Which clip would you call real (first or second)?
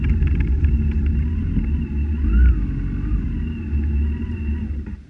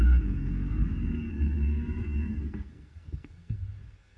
first